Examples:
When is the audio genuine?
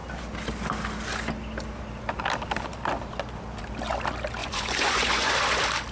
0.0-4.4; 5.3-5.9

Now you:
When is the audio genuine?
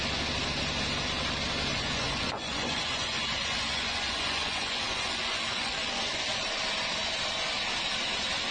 0.0-1.7; 6.6-8.5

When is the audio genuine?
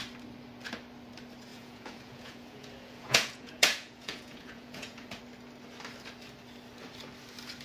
0.0-1.5; 5.2-7.6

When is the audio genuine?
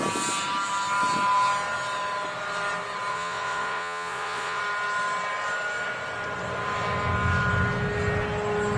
0.0-3.1; 4.6-8.8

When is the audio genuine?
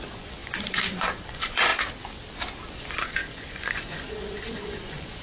1.7-2.7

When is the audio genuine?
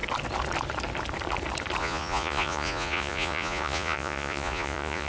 0.0-1.8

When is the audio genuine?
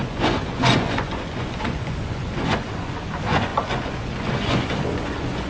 none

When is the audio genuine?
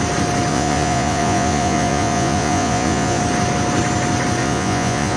0.0-0.5; 3.2-4.4